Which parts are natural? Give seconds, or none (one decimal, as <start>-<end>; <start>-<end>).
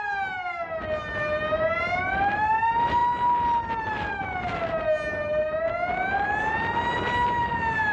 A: 0.0-7.9